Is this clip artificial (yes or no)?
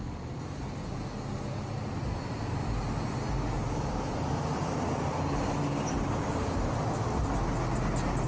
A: no